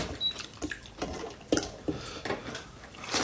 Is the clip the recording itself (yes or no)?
yes